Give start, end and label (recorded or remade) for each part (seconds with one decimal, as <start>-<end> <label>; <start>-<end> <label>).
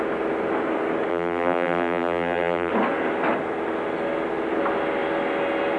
0.0-1.1 recorded; 1.1-2.7 remade; 2.7-5.8 recorded